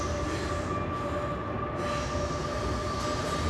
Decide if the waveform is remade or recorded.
recorded